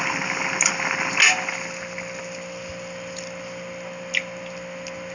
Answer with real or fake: real